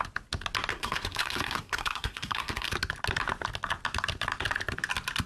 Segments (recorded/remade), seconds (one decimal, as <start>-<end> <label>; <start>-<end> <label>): 0.0-0.7 recorded; 0.7-2.7 remade; 2.7-5.3 recorded